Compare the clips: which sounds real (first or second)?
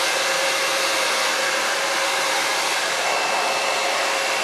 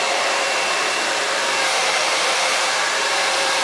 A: first